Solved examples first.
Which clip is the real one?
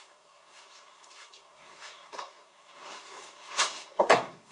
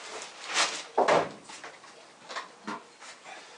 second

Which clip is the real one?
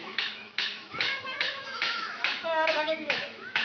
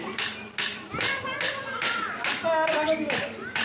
second